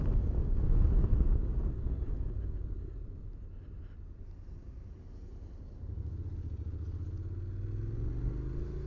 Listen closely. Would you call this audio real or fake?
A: real